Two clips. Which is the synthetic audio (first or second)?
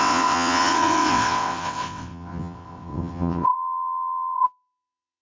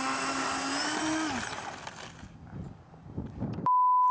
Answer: first